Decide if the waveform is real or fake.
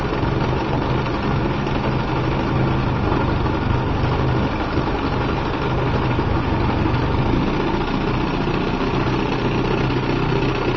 real